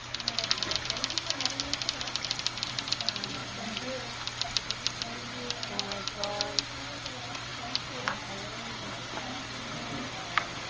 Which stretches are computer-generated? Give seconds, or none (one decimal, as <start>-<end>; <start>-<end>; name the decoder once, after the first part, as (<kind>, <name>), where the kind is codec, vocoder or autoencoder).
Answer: none